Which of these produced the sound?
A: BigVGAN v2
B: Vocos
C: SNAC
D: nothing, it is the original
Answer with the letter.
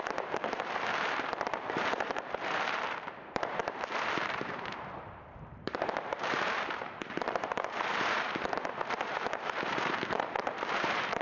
A